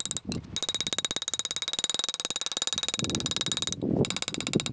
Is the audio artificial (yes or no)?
no